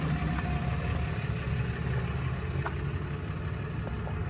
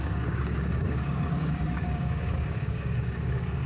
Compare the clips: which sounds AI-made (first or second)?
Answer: second